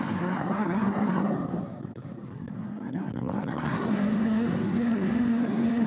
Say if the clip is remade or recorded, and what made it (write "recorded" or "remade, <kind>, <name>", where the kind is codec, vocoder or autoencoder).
remade, codec, SNAC